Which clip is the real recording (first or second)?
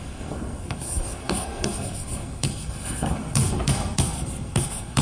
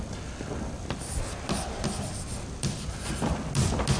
second